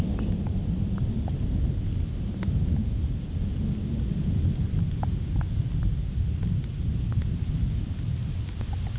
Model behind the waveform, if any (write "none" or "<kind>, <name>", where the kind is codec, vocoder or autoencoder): none